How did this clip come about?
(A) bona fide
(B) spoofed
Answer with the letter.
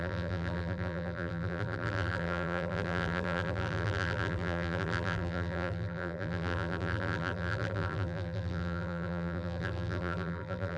B